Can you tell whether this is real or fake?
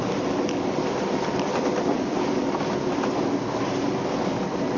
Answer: real